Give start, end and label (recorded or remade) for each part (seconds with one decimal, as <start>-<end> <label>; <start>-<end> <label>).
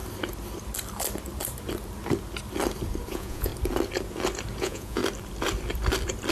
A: 0.0-3.1 recorded; 3.1-3.5 remade; 3.5-4.6 recorded; 4.6-5.0 remade; 5.0-6.3 recorded